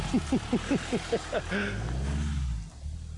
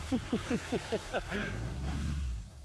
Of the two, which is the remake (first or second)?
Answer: second